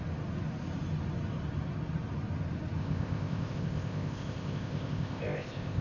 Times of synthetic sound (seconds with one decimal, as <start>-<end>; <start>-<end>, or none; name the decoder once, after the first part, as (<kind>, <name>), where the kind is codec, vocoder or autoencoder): 2.8-5.8 (codec, ZipCodec)

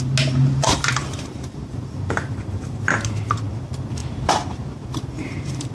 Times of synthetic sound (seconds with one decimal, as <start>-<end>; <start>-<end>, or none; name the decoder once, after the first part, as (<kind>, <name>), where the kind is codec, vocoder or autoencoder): 0.4-3.6 (vocoder, BigVGAN v2); 4.0-5.7

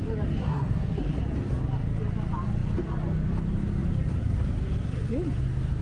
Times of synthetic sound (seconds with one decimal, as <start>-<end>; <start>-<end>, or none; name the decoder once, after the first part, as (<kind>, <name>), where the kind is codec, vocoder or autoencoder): 0.4-1.2 (codec, SNAC)

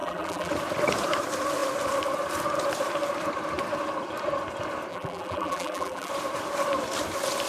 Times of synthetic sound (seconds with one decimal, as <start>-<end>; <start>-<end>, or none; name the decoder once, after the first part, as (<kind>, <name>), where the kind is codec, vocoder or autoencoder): 0.0-0.5 (vocoder, BigVGAN v2); 4.9-6.1

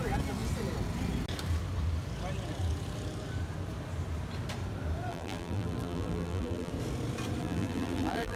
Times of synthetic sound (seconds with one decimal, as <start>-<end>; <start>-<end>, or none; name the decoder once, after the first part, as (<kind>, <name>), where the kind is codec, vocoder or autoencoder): 5.1-6.7 (vocoder, BigVGAN v2); 7.4-8.4